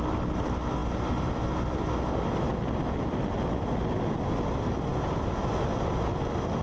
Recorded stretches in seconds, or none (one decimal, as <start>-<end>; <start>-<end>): 0.0-6.6